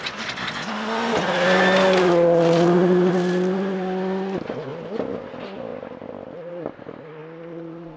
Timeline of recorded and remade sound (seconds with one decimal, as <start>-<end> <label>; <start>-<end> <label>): 0.0-8.0 recorded